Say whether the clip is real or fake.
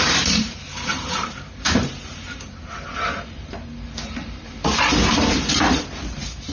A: fake